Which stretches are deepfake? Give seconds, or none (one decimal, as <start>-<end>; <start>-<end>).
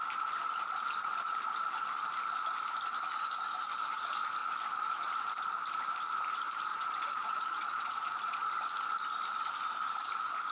6.7-8.5